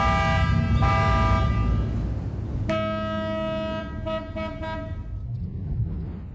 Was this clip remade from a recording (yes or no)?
no